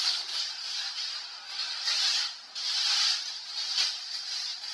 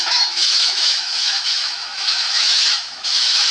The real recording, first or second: first